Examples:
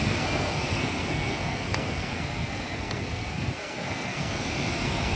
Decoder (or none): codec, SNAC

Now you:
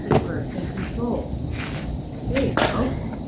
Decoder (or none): none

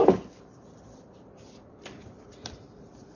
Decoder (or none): vocoder, BigVGAN v2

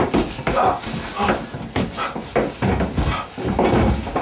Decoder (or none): none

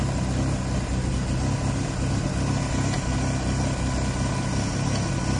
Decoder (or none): none